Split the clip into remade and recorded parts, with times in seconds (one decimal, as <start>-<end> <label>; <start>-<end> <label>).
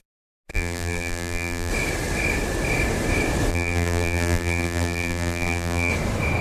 0.0-0.5 recorded; 0.5-1.7 remade; 1.7-3.5 recorded; 3.5-5.9 remade; 5.9-6.4 recorded